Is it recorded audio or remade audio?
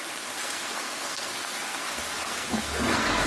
remade